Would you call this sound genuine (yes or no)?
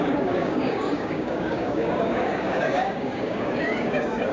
no